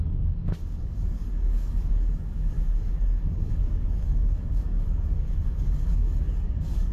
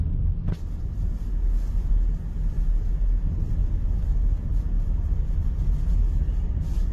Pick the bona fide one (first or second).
second